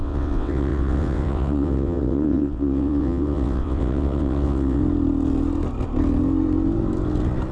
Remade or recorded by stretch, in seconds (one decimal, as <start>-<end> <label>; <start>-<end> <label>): 0.0-4.8 remade; 4.8-7.5 recorded